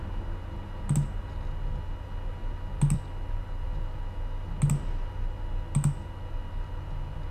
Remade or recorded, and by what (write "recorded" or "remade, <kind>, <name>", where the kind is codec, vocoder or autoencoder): recorded